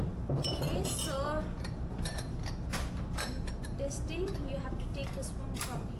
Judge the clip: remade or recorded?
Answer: remade